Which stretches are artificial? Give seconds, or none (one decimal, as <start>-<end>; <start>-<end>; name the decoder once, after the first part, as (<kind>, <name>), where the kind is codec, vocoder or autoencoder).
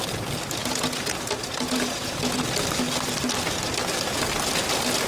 0.6-2.4 (vocoder, Vocos)